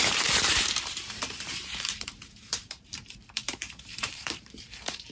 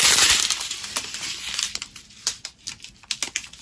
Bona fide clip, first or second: second